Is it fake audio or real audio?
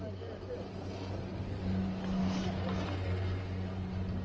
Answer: real